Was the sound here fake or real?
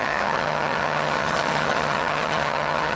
fake